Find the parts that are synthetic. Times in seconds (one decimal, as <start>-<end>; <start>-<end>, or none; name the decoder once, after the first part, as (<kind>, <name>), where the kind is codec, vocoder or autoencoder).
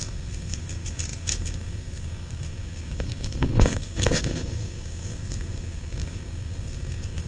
0.0-7.3 (codec, SNAC)